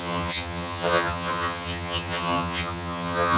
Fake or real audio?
fake